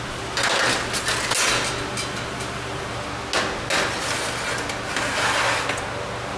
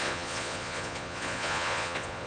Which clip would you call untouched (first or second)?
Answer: first